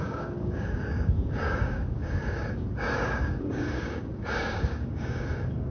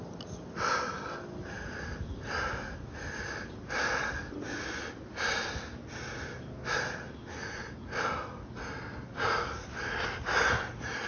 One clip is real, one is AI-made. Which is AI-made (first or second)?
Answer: first